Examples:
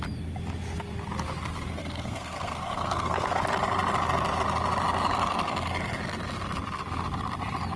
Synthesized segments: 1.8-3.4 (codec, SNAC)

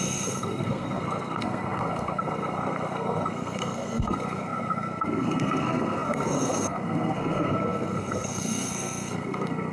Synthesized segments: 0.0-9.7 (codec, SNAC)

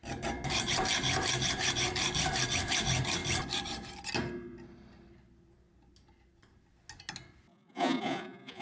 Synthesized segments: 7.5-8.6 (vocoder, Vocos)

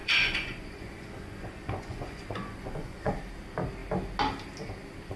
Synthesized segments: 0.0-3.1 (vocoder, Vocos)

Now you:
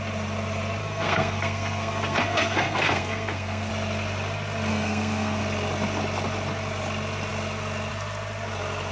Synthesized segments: 0.8-3.7 (codec, SNAC); 4.7-5.4

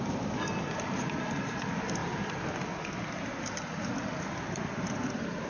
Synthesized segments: none

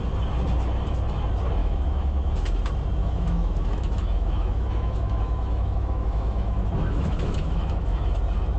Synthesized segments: 1.6-2.3 (autoencoder, DAC-VAE); 3.0-8.1

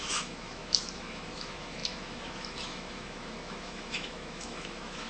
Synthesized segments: 0.0-5.1 (autoencoder, DAC-VAE)